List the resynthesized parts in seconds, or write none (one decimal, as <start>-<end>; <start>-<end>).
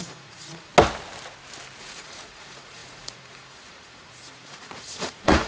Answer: 0.0-0.7; 1.8-5.5